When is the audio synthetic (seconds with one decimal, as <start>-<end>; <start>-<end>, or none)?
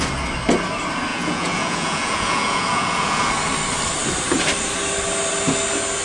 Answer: 1.1-3.3